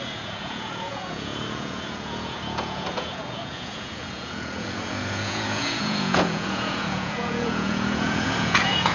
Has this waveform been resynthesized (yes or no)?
yes